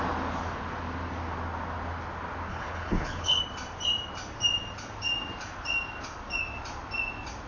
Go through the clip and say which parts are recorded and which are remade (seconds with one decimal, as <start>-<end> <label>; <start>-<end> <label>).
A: 0.0-2.5 recorded; 2.5-3.4 remade; 3.4-7.5 recorded